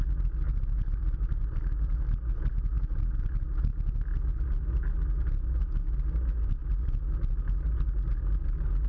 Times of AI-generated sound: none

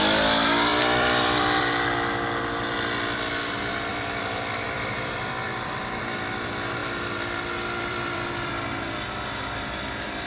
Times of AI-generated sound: 0.7-1.6 (vocoder, BigVGAN v2); 3.9-6.0; 6.8-8.5

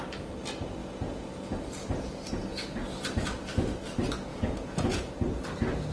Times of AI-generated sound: 0.8-1.6 (vocoder, Vocos); 4.3-5.1

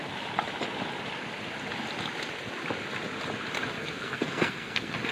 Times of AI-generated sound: 3.8-5.1 (codec, SNAC)

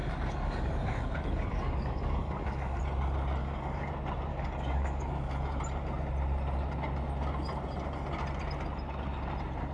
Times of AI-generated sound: 0.0-2.8 (codec, DAC); 3.4-3.9; 4.3-5.6